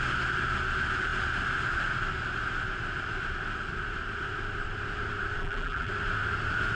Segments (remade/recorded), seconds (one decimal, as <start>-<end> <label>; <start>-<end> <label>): 0.0-5.4 recorded; 5.4-5.9 remade; 5.9-6.7 recorded